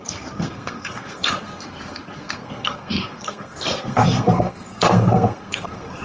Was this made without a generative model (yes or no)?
no